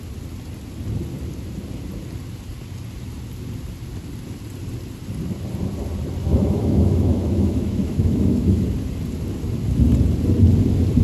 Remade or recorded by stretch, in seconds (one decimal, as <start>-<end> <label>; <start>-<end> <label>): 0.0-6.3 recorded; 6.3-8.6 remade; 8.6-11.0 recorded